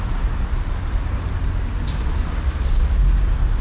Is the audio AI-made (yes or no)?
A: no